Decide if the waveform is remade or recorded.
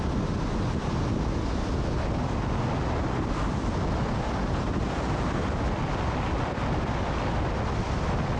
recorded